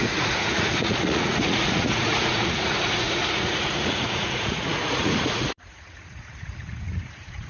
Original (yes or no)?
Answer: no